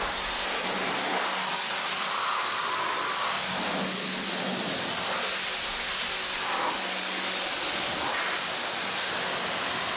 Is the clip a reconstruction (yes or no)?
no